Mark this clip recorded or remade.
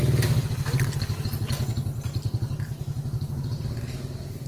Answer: recorded